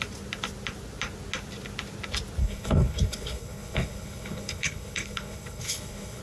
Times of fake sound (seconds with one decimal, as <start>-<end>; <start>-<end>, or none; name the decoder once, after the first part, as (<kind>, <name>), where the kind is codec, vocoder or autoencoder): 2.4-6.2 (codec, HILCodec)